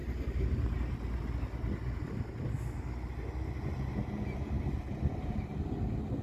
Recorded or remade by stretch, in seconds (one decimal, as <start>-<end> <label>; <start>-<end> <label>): 0.0-6.2 recorded